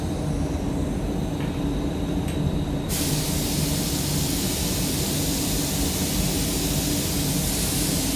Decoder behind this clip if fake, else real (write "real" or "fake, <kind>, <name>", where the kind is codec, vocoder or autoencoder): real